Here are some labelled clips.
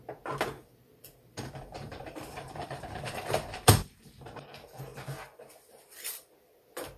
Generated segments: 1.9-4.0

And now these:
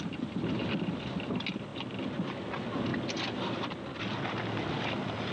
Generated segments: none